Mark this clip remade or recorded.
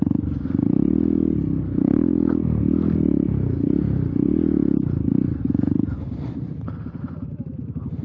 recorded